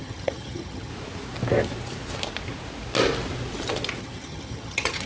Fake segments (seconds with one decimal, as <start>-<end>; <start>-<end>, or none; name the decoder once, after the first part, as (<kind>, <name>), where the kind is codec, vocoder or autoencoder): 0.0-0.9 (vocoder, HiFi-GAN); 4.0-5.1